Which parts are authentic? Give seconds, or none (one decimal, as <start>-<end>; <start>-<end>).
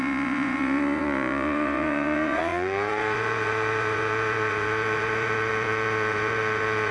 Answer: none